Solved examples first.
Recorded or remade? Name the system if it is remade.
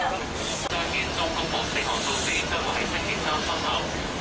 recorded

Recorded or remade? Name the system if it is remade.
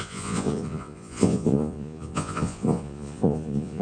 remade, vocoder, Vocos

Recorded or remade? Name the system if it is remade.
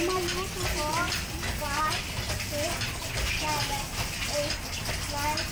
recorded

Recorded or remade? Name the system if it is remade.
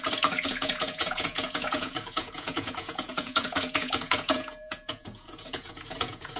remade, vocoder, Vocos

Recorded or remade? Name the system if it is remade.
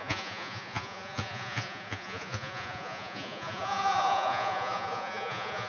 remade, vocoder, Vocos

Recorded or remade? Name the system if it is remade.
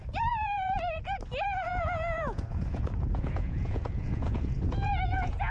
remade, vocoder, Vocos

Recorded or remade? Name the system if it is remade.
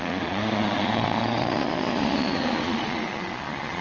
remade, vocoder, Vocos